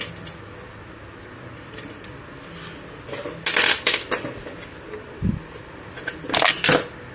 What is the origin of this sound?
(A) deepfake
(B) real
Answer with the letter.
B